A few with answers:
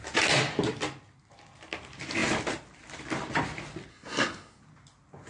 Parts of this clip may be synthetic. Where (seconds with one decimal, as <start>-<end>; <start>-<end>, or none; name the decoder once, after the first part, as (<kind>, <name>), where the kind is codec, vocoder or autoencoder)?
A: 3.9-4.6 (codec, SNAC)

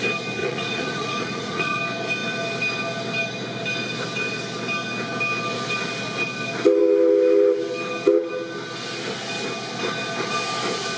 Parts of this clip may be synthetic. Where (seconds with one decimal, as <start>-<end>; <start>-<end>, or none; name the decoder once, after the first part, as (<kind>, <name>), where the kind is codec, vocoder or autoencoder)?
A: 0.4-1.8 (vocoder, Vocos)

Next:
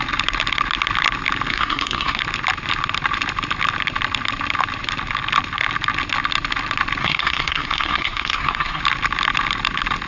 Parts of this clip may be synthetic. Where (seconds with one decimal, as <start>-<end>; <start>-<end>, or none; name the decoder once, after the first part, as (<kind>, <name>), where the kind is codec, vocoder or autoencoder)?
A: 1.5-2.2 (codec, SNAC); 7.0-8.8

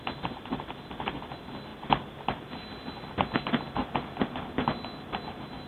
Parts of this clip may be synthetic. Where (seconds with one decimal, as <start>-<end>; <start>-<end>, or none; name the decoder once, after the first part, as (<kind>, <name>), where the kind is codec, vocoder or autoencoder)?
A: none

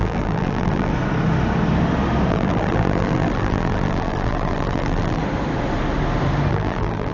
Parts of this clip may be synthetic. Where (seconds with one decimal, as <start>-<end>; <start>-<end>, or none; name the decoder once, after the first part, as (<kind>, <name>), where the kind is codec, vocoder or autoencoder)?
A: 0.0-0.9 (vocoder, BigVGAN v2); 2.3-5.2; 6.5-7.1

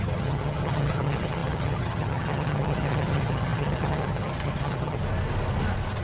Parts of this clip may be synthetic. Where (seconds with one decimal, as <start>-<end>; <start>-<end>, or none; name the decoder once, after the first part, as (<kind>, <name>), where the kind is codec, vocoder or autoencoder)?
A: 0.0-5.0 (vocoder, HiFi-GAN)

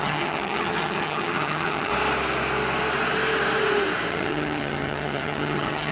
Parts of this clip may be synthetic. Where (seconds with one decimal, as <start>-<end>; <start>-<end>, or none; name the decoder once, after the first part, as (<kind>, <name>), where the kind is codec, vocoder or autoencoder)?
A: 0.0-1.9 (vocoder, HiFi-GAN); 4.1-5.9